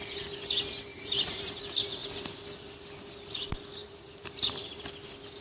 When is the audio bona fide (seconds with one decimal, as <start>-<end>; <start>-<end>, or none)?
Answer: 0.0-0.9; 1.6-3.8; 4.9-5.4